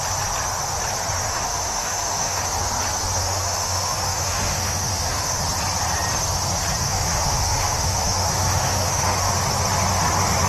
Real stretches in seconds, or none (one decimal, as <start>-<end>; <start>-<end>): 0.0-1.3; 2.4-3.2; 5.4-6.8; 9.3-10.5